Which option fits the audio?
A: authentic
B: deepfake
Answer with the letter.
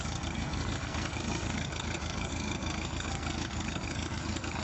B